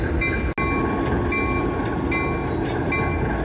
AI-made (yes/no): no